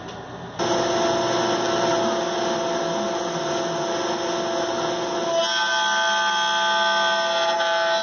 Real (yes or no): yes